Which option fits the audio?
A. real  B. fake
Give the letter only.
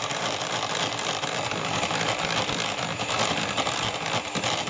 B